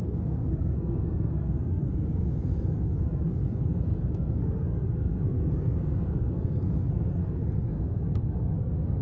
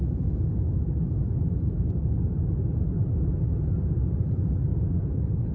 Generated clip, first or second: first